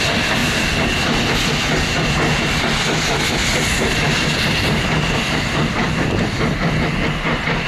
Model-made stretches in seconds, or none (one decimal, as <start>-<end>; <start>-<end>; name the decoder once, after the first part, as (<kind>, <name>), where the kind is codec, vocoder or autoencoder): 3.4-6.4 (vocoder, BigVGAN v2)